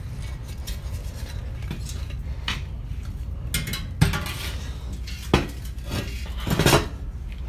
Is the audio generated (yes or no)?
no